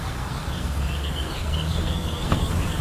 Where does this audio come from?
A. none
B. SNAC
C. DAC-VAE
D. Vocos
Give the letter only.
B